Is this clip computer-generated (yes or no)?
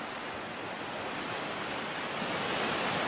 no